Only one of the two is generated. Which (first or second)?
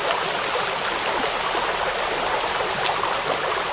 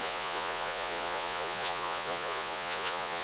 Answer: second